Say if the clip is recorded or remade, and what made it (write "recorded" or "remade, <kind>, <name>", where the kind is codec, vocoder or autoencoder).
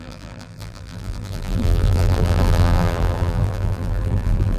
remade, vocoder, BigVGAN v2